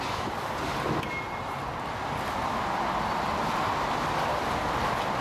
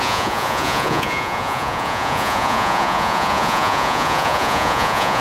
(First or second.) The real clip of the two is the first